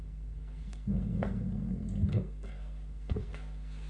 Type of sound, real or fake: fake